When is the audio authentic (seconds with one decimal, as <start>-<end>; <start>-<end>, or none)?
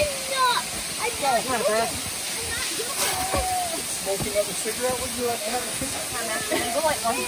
0.0-5.2; 6.0-7.3